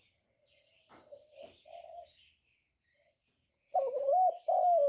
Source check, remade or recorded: remade